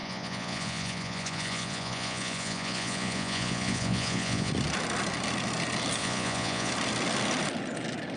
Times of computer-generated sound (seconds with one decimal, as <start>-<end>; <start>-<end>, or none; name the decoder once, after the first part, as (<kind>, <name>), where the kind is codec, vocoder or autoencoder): 0.0-4.5 (vocoder, Vocos); 6.0-6.7